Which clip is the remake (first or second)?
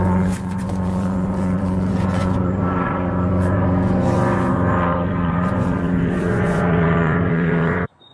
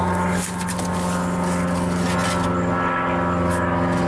first